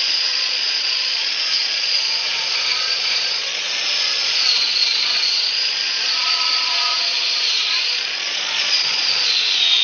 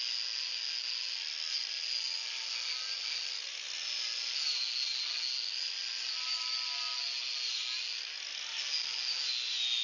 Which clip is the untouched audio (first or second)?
second